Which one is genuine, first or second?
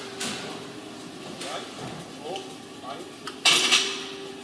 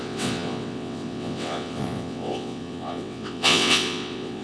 first